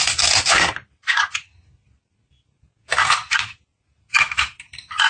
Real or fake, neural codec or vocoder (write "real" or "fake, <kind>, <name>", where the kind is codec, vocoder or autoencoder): real